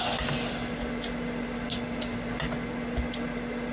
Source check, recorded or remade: recorded